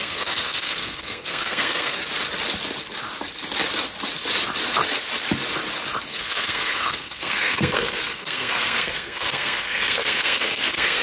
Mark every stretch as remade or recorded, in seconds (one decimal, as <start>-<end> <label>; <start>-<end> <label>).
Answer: 0.0-2.0 remade; 2.0-6.1 recorded; 6.1-11.0 remade